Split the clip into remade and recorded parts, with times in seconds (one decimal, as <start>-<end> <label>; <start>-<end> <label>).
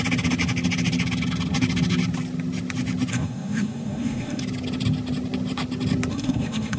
0.0-3.1 recorded; 3.1-4.4 remade; 4.4-6.1 recorded; 6.1-6.8 remade